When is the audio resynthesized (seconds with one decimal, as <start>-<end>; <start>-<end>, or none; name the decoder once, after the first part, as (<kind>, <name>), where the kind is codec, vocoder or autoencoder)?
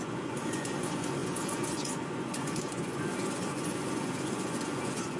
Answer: 0.0-5.2 (vocoder, Vocos)